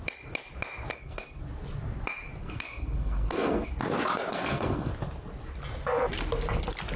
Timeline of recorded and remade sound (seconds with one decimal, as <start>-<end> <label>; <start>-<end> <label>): 0.0-0.9 recorded; 0.9-1.4 remade; 1.4-2.4 recorded; 2.4-3.7 remade; 3.7-4.3 recorded; 4.3-4.9 remade; 4.9-7.0 recorded